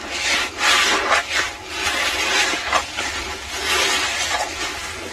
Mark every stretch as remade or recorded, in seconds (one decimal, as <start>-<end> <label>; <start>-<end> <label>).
0.0-5.1 recorded